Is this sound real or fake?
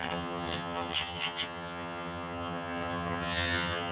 fake